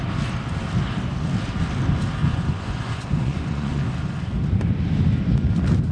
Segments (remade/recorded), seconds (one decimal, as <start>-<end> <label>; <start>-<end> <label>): 0.0-2.2 recorded; 2.2-3.8 remade; 3.8-5.9 recorded